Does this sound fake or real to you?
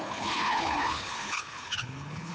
fake